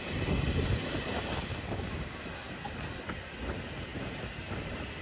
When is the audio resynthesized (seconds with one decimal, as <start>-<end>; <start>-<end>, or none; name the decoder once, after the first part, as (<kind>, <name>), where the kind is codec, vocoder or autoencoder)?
1.5-2.2 (codec, DAC)